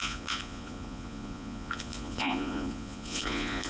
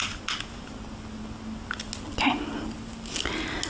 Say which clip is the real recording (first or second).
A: second